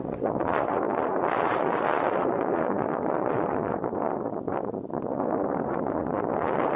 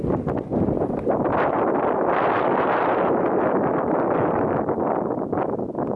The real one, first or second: second